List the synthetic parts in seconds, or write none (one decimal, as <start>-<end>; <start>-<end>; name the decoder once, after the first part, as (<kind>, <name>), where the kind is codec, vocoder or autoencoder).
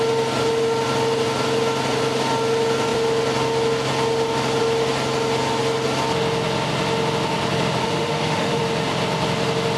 7.8-8.6 (autoencoder, DAC-VAE)